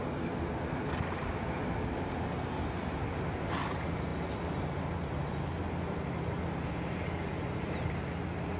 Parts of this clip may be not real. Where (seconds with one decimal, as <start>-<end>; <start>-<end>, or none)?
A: none